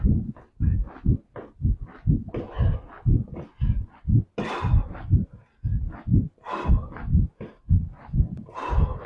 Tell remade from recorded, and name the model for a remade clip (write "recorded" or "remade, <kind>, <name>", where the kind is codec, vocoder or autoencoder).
recorded